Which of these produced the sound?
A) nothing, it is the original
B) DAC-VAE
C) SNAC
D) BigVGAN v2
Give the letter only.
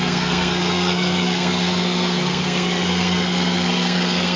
C